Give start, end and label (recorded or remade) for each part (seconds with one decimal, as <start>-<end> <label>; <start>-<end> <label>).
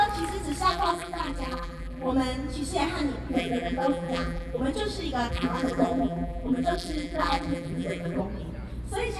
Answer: 0.0-0.7 recorded; 0.7-2.1 remade; 2.1-3.3 recorded; 3.3-4.6 remade; 4.6-5.3 recorded; 5.3-8.2 remade; 8.2-9.2 recorded